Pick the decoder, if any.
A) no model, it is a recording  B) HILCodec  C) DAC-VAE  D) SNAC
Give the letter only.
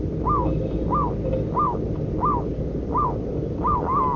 A